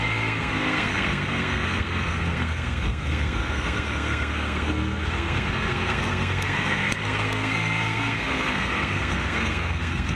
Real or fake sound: fake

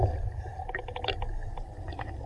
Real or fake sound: real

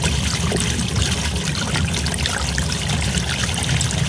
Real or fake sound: real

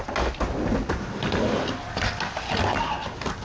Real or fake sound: real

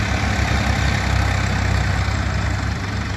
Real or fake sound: real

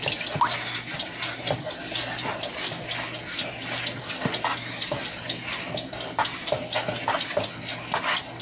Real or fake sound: real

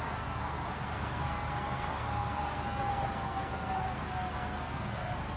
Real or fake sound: fake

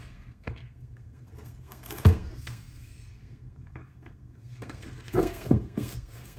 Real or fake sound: fake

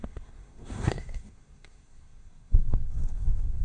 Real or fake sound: fake